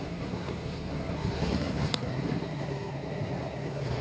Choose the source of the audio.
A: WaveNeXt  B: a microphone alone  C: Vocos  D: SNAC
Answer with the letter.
D